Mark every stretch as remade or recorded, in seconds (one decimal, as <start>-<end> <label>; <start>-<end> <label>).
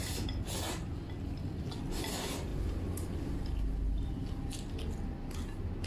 0.0-5.9 recorded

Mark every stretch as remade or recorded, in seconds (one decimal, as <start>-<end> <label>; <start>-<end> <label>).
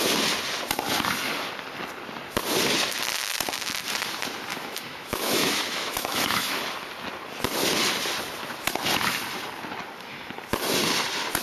0.0-4.5 recorded; 4.5-6.6 remade; 6.6-11.4 recorded